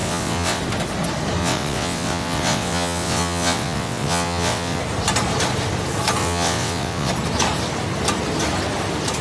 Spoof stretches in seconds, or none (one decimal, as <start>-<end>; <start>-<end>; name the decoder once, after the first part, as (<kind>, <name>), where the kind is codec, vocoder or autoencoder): 0.0-0.6 (vocoder, WaveNeXt); 1.4-4.8; 6.2-7.1